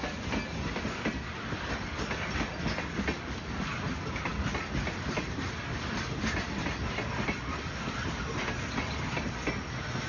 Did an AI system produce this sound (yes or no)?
no